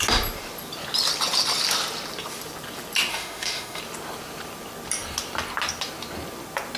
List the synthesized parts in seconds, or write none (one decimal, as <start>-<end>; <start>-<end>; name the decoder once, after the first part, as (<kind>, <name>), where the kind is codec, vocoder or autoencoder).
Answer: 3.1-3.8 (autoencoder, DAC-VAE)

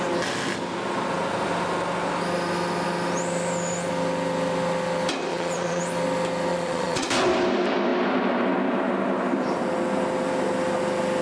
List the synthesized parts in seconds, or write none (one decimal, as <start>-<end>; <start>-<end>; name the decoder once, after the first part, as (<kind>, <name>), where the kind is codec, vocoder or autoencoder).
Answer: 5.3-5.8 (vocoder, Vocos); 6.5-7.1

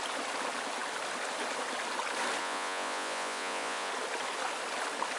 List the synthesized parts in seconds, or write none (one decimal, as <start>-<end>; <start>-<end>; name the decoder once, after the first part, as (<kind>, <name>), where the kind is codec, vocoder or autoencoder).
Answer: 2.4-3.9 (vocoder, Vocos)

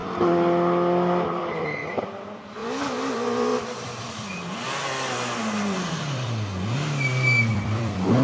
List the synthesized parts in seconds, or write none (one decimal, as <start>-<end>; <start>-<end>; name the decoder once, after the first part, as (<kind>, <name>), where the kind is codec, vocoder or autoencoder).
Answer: 1.4-2.6 (vocoder, BigVGAN v2); 3.1-6.5; 7.5-8.2

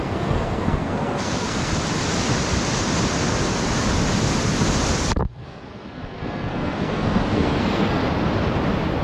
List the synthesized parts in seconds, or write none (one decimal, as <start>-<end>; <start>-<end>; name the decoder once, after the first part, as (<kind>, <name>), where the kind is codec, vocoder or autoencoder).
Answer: 0.0-1.7 (codec, SNAC); 5.2-8.0